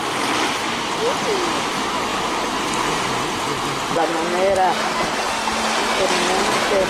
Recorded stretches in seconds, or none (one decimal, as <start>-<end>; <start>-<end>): 0.0-6.9